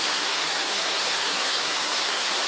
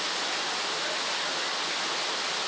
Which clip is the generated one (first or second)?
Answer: first